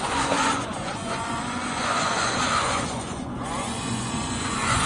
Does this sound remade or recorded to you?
remade